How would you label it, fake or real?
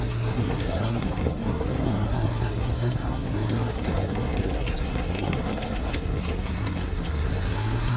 fake